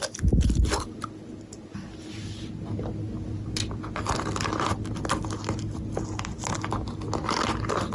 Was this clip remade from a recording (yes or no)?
no